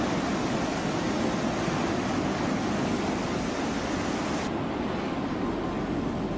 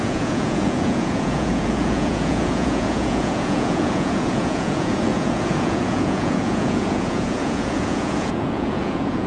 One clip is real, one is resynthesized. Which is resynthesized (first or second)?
second